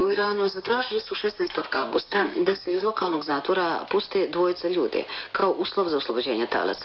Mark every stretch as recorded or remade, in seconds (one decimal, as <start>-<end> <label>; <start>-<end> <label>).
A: 0.0-3.3 remade; 3.3-6.8 recorded